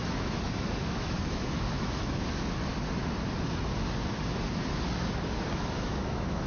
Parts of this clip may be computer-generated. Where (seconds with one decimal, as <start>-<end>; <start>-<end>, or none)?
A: 0.0-2.7; 5.6-6.5